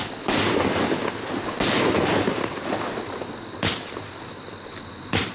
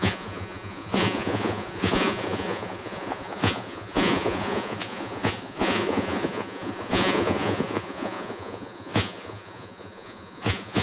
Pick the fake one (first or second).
second